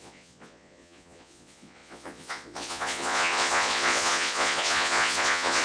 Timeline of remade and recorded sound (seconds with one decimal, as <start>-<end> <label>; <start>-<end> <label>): 0.0-5.6 remade